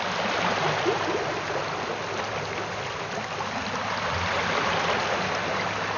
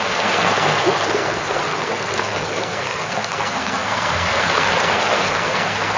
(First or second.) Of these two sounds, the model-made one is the second